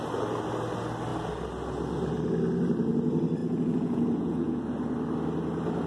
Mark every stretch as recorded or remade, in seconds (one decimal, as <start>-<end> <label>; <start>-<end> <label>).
0.0-3.4 recorded; 3.4-4.6 remade; 4.6-5.9 recorded